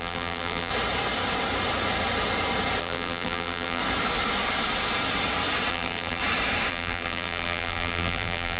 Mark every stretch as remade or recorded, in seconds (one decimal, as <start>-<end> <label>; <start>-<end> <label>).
0.0-0.7 remade; 0.7-2.8 recorded; 2.8-3.8 remade; 3.8-5.7 recorded; 5.7-6.2 remade; 6.2-6.7 recorded; 6.7-8.6 remade